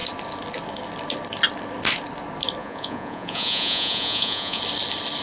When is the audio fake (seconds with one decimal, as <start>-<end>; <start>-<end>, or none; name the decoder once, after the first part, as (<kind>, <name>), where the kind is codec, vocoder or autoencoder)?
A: 2.6-4.6 (vocoder, Vocos)